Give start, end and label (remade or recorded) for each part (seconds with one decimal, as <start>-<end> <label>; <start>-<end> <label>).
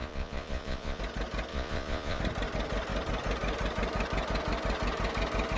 0.0-1.0 remade; 1.0-1.5 recorded; 1.5-2.2 remade; 2.2-5.6 recorded